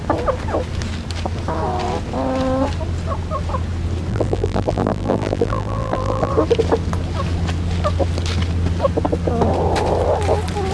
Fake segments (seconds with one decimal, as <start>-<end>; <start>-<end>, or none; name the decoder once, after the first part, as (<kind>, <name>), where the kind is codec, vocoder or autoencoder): 4.1-6.3 (vocoder, BigVGAN v2)